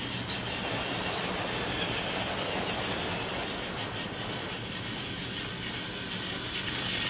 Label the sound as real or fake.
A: real